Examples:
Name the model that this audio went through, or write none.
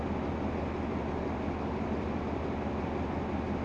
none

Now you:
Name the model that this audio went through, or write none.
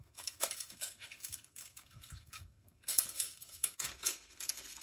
codec, SNAC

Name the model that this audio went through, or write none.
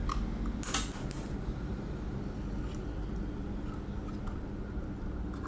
none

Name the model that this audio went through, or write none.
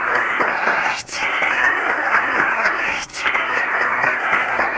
codec, SNAC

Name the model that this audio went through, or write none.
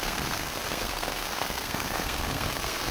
codec, SNAC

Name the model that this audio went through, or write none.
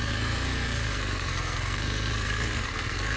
codec, SNAC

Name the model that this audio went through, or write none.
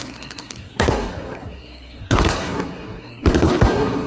codec, SNAC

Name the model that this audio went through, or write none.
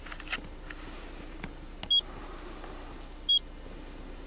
none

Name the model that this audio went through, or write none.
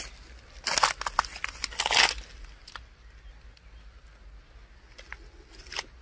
none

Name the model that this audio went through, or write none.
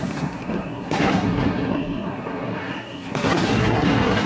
codec, SNAC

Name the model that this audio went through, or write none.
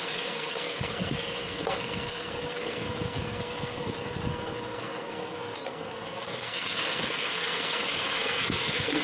codec, SNAC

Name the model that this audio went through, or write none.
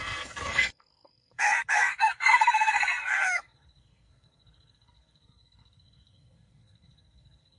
codec, SNAC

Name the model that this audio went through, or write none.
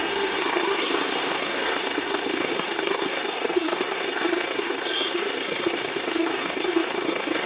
codec, SNAC